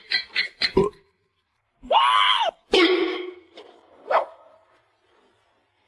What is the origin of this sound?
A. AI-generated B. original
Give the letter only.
B